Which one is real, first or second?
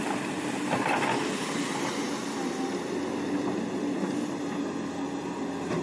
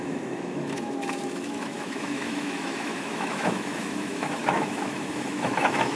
first